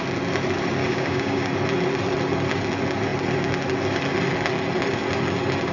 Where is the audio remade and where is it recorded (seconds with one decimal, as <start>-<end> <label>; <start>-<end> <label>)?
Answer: 0.0-0.8 recorded; 0.8-1.5 remade; 1.5-5.7 recorded